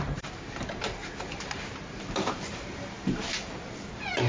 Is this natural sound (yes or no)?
no